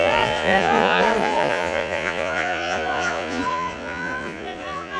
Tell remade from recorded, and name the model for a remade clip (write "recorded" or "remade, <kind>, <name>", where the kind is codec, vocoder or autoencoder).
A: remade, vocoder, Vocos